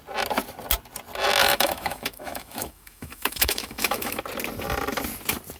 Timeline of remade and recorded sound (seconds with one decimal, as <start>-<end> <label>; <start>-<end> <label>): 0.0-1.4 recorded; 1.4-4.2 remade; 4.2-5.6 recorded